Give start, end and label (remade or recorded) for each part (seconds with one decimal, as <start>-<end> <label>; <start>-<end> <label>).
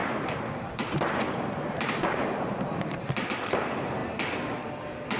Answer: 0.0-3.1 remade; 3.1-5.2 recorded